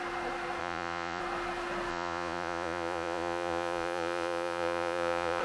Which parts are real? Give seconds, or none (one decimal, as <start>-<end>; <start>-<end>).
0.0-0.6; 1.2-1.9